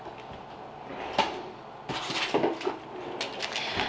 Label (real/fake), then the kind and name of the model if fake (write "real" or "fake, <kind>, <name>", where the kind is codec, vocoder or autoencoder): real